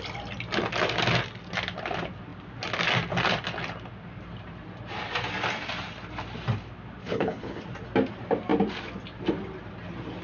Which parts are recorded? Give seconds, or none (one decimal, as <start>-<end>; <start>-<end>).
0.0-7.0; 7.6-10.2